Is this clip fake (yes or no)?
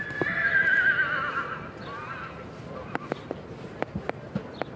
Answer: no